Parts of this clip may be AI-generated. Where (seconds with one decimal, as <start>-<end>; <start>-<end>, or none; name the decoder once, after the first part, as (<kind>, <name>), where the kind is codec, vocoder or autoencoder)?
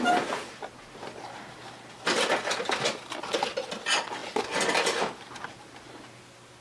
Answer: none